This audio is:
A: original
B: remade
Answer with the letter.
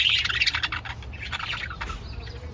A